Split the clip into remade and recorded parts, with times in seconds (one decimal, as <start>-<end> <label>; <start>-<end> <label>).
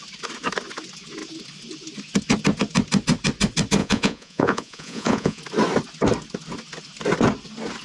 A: 0.0-3.8 recorded; 3.8-5.4 remade; 5.4-7.8 recorded